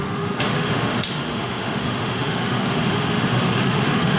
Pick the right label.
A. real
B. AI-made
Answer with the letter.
B